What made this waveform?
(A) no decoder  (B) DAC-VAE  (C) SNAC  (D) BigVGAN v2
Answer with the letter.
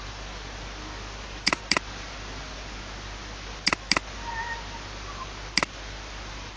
A